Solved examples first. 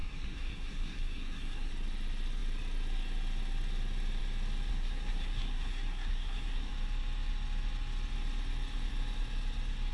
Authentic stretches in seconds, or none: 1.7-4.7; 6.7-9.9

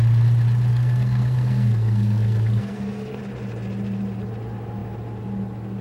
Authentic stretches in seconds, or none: 0.0-0.7; 3.2-5.8

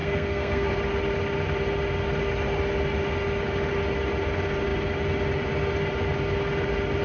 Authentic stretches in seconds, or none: 0.7-7.0

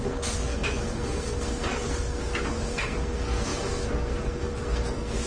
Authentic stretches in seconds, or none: none

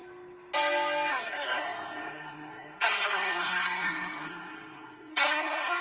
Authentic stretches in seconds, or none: 0.0-1.1

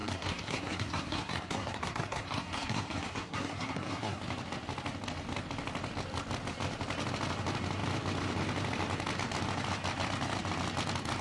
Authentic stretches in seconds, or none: 4.2-11.2